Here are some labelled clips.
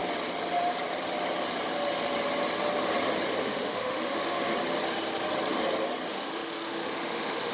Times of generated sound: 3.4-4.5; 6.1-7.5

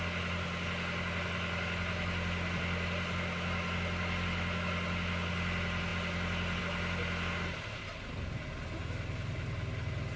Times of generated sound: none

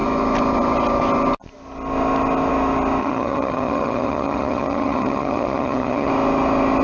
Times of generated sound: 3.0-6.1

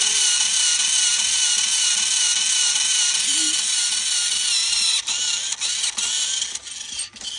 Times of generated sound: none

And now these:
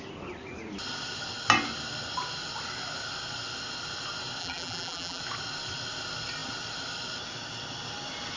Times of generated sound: 4.4-5.2

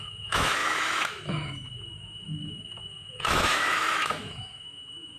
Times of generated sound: 0.0-5.2